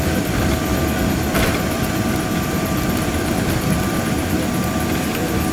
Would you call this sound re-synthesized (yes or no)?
yes